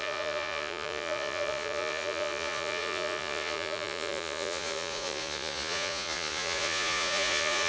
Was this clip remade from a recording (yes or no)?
yes